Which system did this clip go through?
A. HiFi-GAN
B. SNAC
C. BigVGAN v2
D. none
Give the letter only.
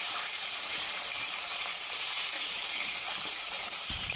C